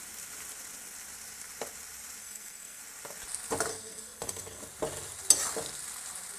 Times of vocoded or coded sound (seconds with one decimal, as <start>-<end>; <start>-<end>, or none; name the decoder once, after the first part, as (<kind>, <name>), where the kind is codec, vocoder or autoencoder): 2.2-2.8 (codec, SNAC); 3.7-4.6